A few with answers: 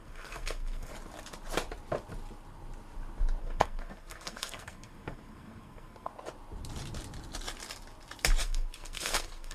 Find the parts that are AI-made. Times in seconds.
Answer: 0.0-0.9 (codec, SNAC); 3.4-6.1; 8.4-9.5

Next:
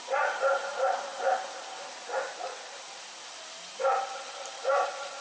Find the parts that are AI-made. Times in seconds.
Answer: none

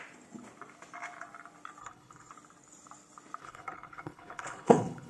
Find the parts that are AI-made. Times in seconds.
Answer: 1.8-2.3 (codec, HILCodec); 3.4-5.1

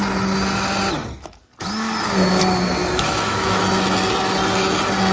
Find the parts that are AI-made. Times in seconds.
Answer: 2.8-3.6 (autoencoder, DAC-VAE)